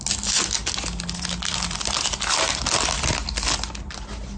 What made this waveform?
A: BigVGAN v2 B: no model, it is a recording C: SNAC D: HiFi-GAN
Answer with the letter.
B